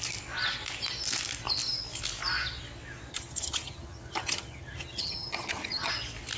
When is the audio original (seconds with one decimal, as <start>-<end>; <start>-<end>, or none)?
0.0-3.1; 5.9-6.4